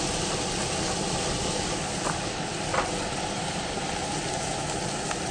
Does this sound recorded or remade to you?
recorded